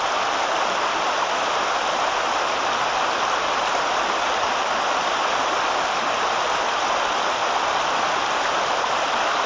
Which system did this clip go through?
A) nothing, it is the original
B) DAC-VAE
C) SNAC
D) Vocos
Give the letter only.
A